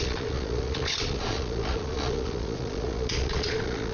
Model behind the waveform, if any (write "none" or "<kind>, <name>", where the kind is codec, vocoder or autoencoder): vocoder, Vocos